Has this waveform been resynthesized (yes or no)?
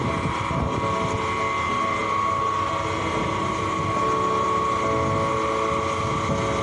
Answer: no